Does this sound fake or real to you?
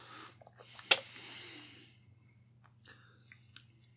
real